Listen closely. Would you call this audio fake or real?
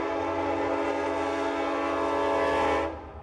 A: real